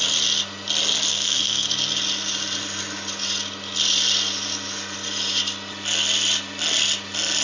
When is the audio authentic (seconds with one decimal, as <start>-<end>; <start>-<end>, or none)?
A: 0.0-1.1; 1.7-7.4